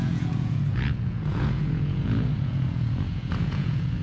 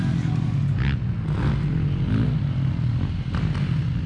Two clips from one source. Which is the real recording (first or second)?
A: second